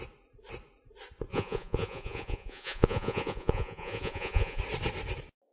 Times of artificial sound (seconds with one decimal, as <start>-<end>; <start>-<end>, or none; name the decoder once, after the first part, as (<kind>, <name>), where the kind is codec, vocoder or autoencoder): 1.3-4.6 (vocoder, Vocos)